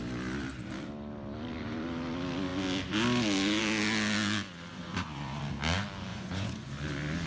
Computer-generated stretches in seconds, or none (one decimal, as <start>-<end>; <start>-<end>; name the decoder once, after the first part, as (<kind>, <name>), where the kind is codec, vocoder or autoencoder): 4.7-5.4 (vocoder, Vocos); 6.1-6.7